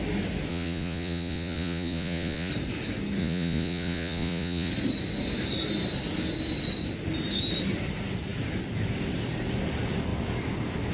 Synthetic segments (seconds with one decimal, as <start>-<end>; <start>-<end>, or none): 0.5-2.5; 3.2-4.7